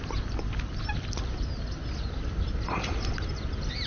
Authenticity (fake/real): real